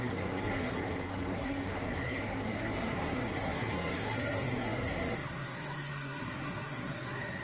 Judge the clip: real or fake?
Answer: fake